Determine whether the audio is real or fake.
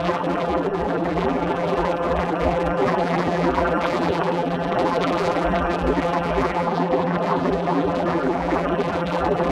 fake